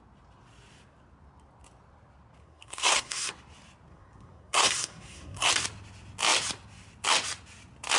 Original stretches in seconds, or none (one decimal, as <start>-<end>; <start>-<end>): 0.0-2.4; 3.3-3.9; 5.5-8.0